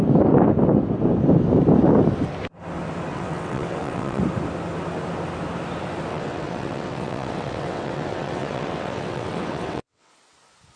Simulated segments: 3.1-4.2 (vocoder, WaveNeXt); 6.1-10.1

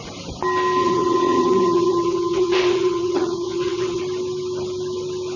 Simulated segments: 0.8-4.0 (vocoder, WaveNeXt)

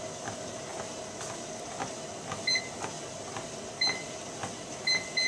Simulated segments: none